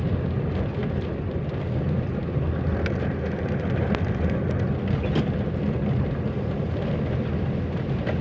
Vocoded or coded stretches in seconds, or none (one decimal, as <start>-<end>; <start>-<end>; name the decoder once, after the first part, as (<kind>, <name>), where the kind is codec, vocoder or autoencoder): 0.8-1.4 (vocoder, BigVGAN v2)